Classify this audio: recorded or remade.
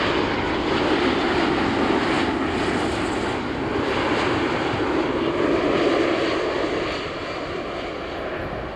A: recorded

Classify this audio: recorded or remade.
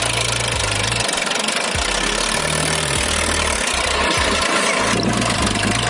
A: recorded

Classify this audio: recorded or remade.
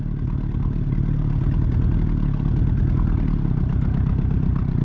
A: recorded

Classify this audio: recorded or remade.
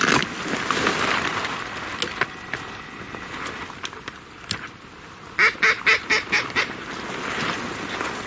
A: recorded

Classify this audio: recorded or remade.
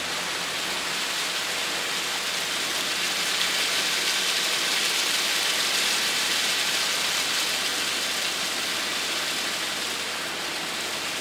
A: recorded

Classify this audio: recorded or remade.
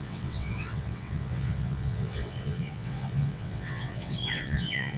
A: remade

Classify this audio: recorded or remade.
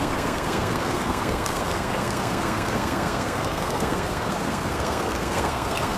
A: remade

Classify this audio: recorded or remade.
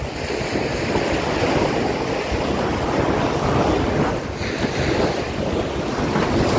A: recorded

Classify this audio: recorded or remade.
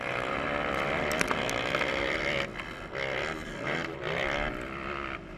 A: recorded